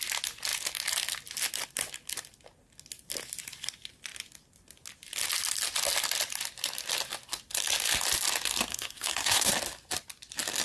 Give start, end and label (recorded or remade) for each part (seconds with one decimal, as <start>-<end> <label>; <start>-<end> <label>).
0.0-8.7 recorded; 8.7-9.5 remade; 9.5-10.6 recorded